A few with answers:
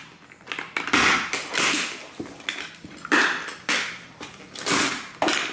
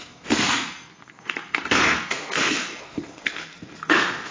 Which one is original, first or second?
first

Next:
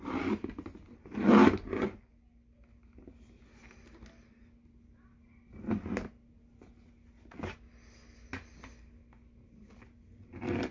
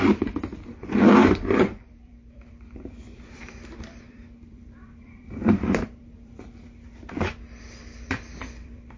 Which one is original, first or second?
first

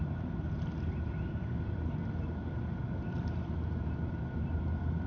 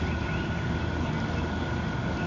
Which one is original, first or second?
second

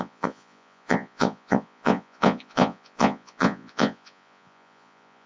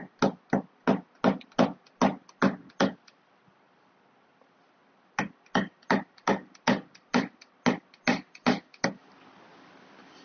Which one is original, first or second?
second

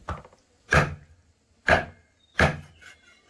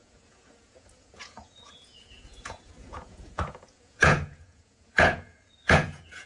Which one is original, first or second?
first